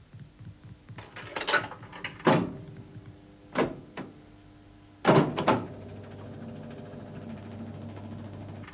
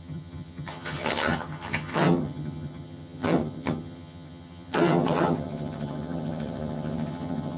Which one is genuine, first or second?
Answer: first